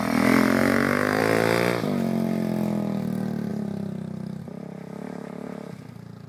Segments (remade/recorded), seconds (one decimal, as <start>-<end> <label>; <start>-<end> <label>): 0.0-0.6 recorded; 0.6-1.2 remade; 1.2-6.3 recorded